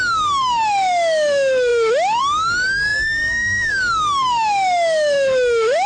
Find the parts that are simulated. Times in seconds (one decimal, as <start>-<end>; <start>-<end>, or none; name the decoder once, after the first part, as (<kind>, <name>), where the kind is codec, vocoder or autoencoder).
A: 0.0-5.9 (autoencoder, DAC-VAE)